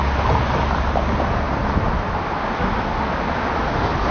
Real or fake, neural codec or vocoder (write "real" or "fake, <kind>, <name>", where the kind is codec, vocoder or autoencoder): real